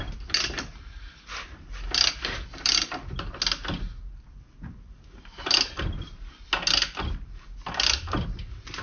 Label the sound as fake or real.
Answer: real